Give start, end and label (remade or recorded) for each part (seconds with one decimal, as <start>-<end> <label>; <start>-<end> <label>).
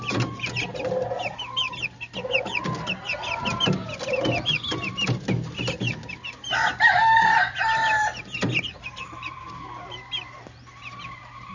0.0-7.0 recorded; 7.0-9.4 remade; 9.4-11.5 recorded